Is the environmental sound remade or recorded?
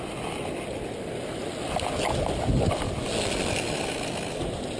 recorded